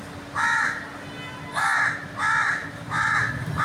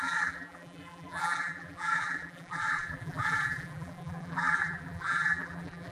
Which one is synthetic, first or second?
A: second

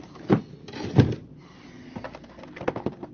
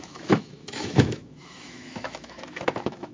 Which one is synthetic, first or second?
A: second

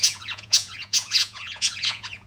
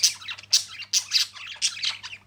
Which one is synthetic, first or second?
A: first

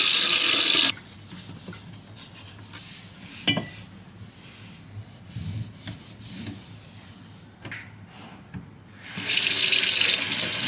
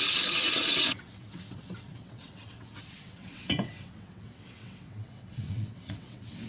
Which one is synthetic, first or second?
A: second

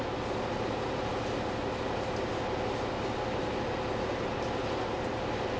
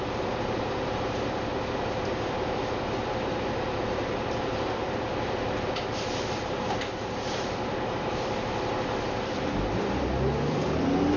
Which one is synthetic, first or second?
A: second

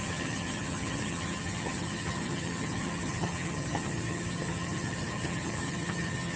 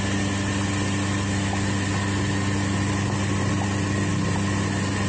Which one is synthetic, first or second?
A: first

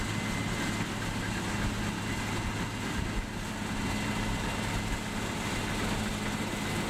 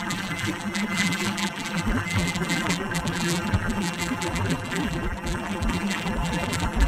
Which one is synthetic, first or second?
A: second